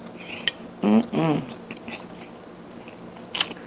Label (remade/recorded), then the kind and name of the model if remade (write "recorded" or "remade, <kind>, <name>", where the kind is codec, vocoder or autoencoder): recorded